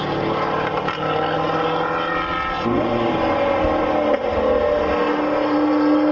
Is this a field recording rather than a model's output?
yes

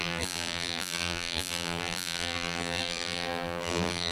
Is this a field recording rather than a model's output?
no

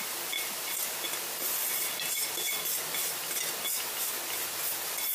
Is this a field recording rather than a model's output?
yes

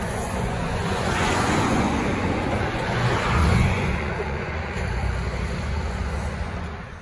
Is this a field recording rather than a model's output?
no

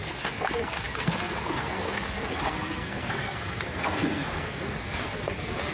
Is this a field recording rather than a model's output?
no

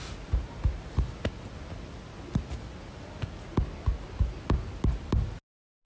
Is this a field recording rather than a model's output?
yes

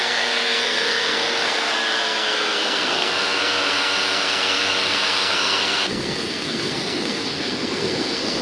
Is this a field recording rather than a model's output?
no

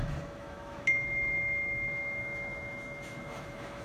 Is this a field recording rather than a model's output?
no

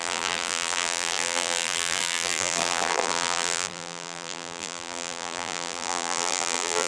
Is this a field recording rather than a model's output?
no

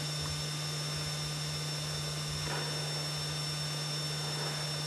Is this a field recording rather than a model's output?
no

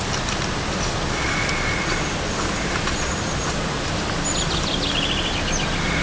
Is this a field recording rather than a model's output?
yes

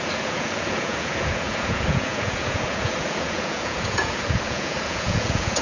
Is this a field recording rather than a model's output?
no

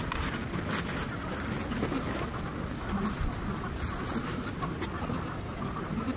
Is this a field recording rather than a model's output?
yes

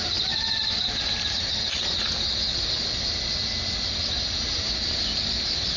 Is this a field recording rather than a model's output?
yes